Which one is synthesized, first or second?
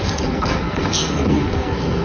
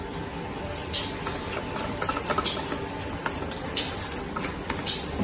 first